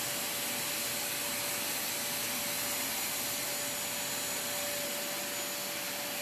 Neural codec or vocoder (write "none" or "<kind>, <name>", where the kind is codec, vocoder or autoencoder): none